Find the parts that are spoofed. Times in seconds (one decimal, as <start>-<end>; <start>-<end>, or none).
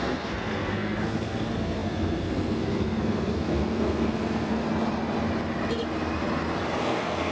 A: 0.0-4.6; 6.8-7.3